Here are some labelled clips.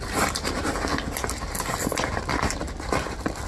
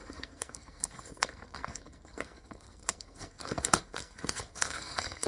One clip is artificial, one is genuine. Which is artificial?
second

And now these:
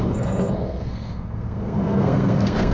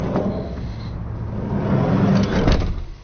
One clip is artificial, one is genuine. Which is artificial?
first